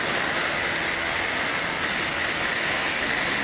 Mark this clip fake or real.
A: real